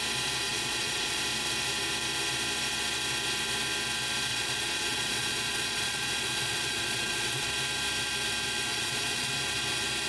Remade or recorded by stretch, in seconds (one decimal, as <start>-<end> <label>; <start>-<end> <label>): 0.0-0.5 recorded; 0.5-1.2 remade; 1.2-4.3 recorded; 4.3-7.5 remade; 7.5-8.7 recorded; 8.7-9.3 remade; 9.3-10.1 recorded